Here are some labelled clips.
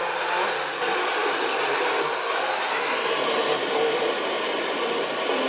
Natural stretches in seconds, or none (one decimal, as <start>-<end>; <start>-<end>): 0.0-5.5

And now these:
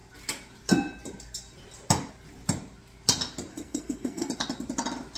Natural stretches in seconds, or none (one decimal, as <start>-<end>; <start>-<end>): 0.0-3.5; 4.3-5.2

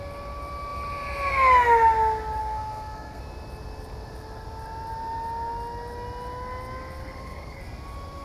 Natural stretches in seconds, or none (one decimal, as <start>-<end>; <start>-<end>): 0.0-2.4; 3.2-7.0; 7.6-8.2

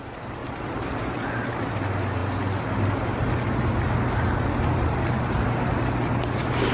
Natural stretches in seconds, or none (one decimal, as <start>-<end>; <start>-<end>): 0.0-0.4; 1.5-4.7; 5.7-6.7